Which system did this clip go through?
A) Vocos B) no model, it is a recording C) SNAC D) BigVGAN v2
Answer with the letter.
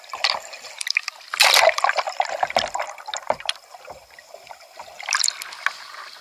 B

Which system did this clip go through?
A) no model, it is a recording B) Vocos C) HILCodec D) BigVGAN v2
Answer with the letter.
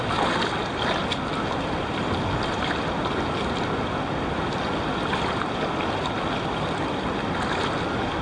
A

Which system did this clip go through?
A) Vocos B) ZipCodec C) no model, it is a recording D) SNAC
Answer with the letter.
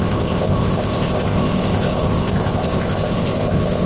B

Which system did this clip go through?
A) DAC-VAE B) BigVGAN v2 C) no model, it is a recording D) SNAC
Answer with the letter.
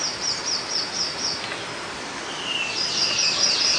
C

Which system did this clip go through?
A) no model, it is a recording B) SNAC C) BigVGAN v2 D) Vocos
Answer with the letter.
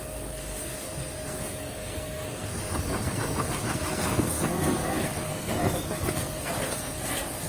B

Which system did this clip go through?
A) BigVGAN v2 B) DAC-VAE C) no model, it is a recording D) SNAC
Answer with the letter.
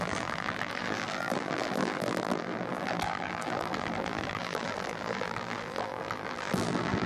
A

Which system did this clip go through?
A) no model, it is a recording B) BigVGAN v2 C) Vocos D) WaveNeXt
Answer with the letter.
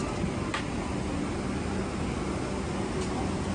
A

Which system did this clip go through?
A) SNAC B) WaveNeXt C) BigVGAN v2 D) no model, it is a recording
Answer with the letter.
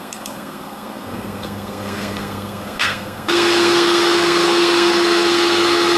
A